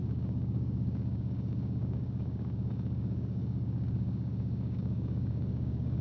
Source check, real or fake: fake